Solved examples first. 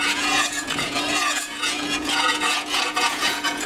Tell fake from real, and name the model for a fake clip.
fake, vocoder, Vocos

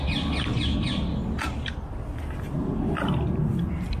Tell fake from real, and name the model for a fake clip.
real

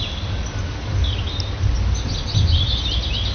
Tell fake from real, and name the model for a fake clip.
real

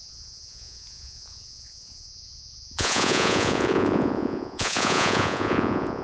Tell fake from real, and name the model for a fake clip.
fake, vocoder, Vocos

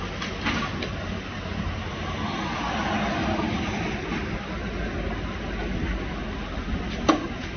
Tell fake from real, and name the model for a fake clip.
real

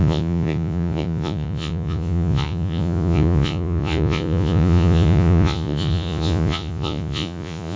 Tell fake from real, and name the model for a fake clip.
fake, vocoder, Vocos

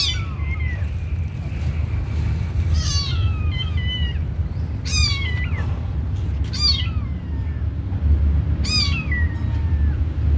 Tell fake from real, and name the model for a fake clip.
real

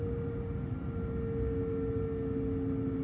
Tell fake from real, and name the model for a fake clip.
real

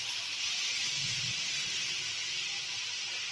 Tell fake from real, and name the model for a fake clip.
real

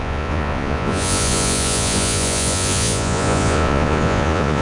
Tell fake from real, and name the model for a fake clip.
fake, vocoder, Vocos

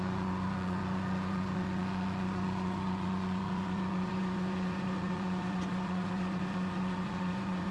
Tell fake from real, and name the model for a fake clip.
fake, vocoder, Vocos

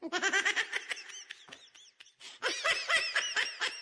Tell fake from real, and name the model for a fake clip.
real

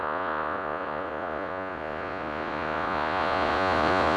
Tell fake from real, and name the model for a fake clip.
fake, vocoder, Vocos